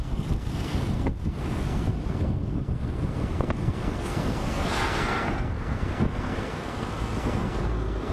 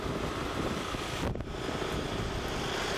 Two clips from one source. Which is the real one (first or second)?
second